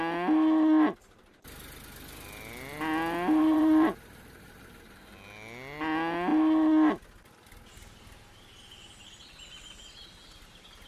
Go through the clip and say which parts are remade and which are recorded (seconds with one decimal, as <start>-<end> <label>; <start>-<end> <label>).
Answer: 0.0-3.4 recorded; 3.4-5.1 remade; 5.1-10.9 recorded